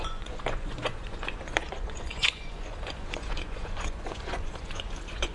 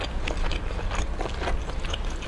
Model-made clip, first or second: first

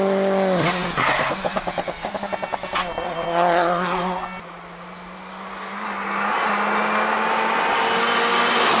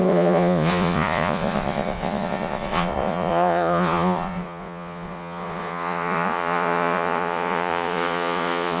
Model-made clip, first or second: second